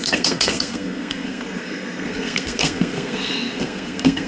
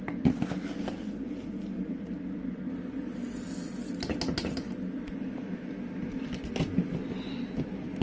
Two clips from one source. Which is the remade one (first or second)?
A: first